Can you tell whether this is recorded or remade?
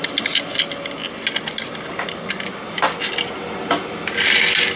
recorded